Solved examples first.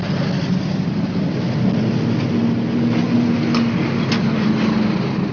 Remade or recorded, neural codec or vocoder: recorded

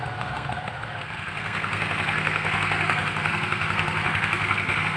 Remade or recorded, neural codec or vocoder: remade, codec, SNAC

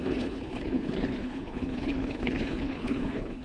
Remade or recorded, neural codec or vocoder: remade, codec, HILCodec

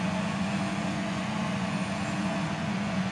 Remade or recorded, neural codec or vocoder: remade, vocoder, Vocos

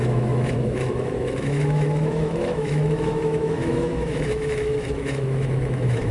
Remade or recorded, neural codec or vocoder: remade, autoencoder, DAC-VAE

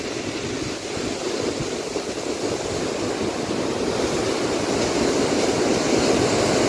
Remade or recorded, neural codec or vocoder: recorded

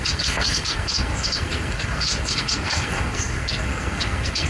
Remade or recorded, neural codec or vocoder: remade, codec, SNAC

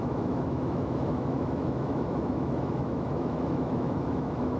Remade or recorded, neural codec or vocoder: remade, autoencoder, DAC-VAE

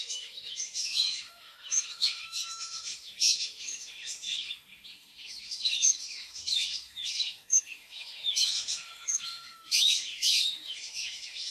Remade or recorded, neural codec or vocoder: remade, autoencoder, DAC-VAE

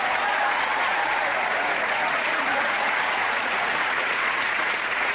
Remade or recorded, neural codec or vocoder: remade, vocoder, Vocos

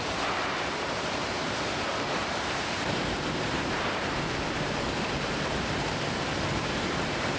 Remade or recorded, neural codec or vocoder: remade, vocoder, BigVGAN v2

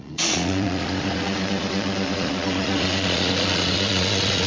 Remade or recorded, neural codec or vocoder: remade, vocoder, Vocos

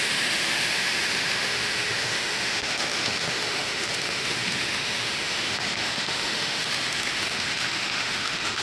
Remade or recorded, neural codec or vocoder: remade, autoencoder, DAC-VAE